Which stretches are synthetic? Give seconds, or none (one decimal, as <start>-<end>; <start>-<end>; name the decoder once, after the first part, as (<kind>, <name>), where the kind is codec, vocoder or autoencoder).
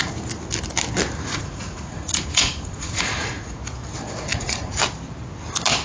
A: 1.3-3.6 (vocoder, Vocos); 4.3-4.8